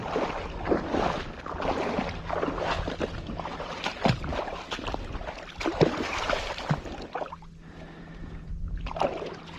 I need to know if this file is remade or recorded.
recorded